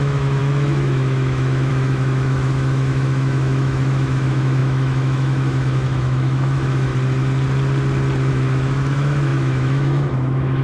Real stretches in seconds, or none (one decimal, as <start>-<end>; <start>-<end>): 6.9-8.3